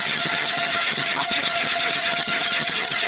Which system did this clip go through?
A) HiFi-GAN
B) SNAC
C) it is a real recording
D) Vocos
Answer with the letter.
A